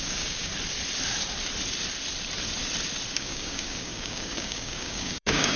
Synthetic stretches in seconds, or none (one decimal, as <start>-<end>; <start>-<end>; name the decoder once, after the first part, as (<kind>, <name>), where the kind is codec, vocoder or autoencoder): 0.0-0.5 (codec, DAC); 3.1-5.6